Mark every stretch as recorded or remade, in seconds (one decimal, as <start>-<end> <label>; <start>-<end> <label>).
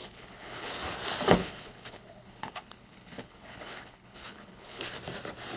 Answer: 0.0-0.7 remade; 0.7-1.4 recorded; 1.4-4.8 remade; 4.8-5.6 recorded